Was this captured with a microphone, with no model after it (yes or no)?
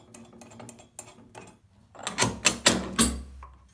yes